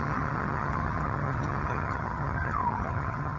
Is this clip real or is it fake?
fake